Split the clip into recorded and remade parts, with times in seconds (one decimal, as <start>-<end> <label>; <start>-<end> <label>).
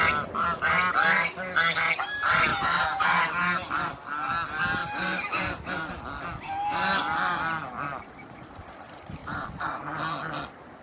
0.0-2.5 recorded; 2.5-3.3 remade; 3.3-4.8 recorded; 4.8-5.9 remade; 5.9-9.2 recorded; 9.2-9.8 remade; 9.8-10.8 recorded